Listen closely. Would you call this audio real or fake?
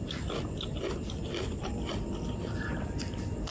real